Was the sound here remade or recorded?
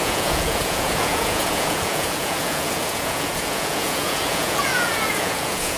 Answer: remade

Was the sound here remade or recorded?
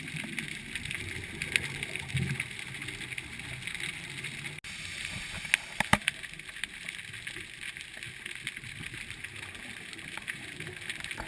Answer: recorded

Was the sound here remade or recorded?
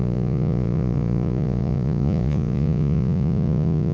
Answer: remade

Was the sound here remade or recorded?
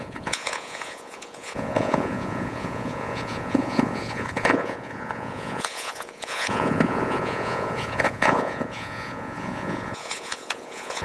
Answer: remade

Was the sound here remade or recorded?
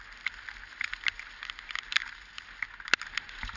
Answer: recorded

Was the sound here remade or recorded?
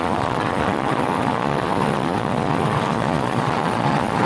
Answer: remade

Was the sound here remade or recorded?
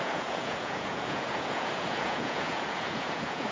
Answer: remade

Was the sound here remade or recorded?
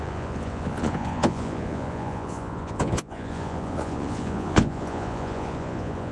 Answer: remade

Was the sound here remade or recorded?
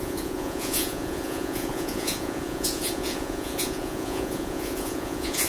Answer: remade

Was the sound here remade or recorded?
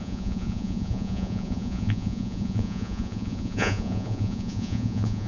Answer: remade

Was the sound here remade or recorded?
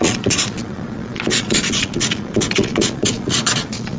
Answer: remade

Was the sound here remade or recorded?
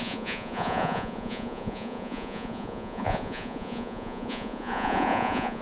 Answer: remade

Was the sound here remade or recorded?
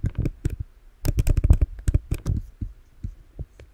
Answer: recorded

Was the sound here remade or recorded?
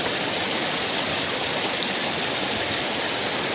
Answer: recorded